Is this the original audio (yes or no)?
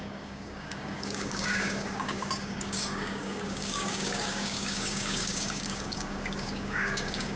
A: no